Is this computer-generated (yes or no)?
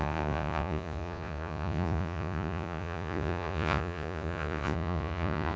yes